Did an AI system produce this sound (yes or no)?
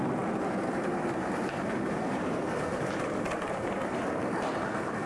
yes